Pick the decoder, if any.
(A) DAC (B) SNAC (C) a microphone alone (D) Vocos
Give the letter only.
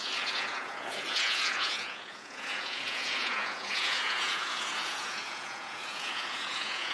D